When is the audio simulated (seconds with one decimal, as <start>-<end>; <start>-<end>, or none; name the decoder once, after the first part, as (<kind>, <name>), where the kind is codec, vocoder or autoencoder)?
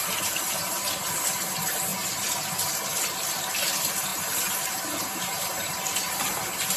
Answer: 4.1-6.1 (vocoder, BigVGAN v2)